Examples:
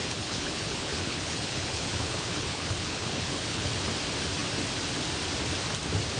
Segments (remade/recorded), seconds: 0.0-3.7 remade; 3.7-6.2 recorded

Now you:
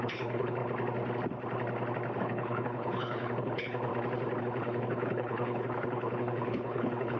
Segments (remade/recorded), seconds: 0.0-0.6 remade; 0.6-2.2 recorded; 2.2-3.9 remade; 3.9-4.4 recorded; 4.4-7.2 remade

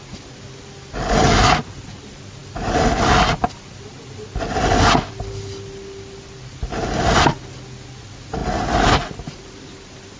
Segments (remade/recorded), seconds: 0.0-10.2 recorded

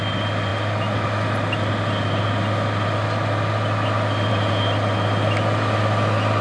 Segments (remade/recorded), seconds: 0.0-6.4 recorded

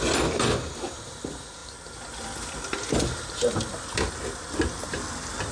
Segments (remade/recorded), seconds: 0.0-5.5 recorded

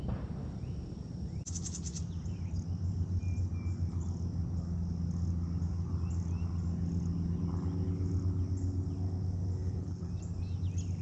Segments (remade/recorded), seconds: 0.0-9.6 recorded; 9.6-10.1 remade; 10.1-11.0 recorded

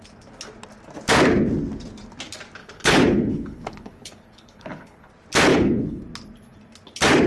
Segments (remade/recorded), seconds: 0.0-2.6 recorded; 2.6-5.1 remade; 5.1-5.5 recorded; 5.5-6.0 remade; 6.0-7.3 recorded

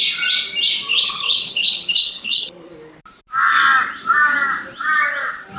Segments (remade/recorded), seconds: 0.0-0.9 recorded; 0.9-2.7 remade; 2.7-5.6 recorded